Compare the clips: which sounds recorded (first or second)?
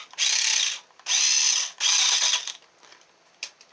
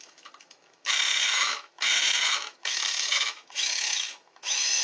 first